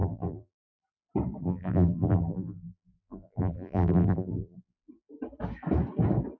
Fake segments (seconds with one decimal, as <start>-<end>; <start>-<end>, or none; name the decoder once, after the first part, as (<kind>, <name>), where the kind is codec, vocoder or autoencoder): 0.0-0.6 (vocoder, BigVGAN v2); 1.4-4.9